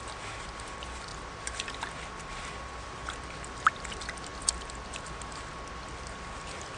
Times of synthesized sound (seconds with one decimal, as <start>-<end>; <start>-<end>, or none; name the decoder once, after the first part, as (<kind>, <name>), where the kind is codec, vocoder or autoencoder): none